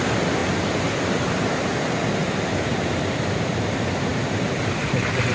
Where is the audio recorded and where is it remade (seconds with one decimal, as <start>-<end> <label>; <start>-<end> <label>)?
0.0-0.4 remade; 0.4-1.0 recorded; 1.0-2.2 remade; 2.2-2.7 recorded; 2.7-5.3 remade